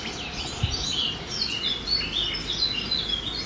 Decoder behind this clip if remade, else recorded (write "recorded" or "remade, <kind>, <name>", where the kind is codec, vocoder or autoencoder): recorded